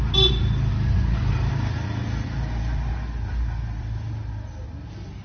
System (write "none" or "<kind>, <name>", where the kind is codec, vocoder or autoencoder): none